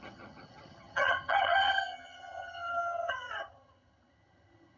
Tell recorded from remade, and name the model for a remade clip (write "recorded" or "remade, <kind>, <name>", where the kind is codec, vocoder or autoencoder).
remade, vocoder, HiFi-GAN